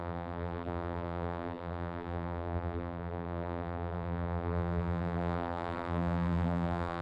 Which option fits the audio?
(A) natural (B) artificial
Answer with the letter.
B